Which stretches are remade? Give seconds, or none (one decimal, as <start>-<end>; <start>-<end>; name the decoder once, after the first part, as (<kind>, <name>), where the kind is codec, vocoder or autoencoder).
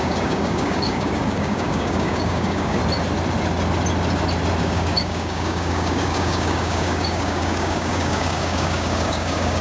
0.0-2.8 (codec, DAC); 4.6-9.6